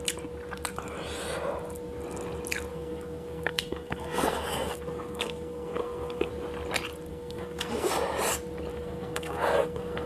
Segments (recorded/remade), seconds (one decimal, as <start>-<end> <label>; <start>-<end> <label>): 0.0-2.7 recorded; 2.7-6.3 remade; 6.3-7.1 recorded; 7.1-7.9 remade; 7.9-8.7 recorded; 8.7-10.1 remade